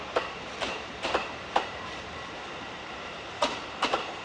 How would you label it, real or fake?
fake